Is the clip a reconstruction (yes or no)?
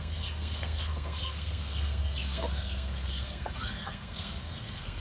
yes